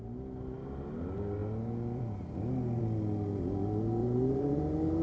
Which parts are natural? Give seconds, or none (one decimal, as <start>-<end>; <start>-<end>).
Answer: 0.0-4.0; 4.6-5.0